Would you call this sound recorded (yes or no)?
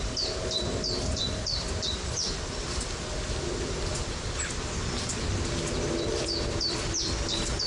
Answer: no